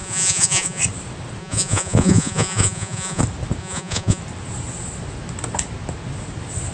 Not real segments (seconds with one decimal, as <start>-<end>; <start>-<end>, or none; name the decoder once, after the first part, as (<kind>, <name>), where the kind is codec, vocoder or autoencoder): 0.0-0.8 (vocoder, Vocos); 1.4-3.2; 3.6-4.2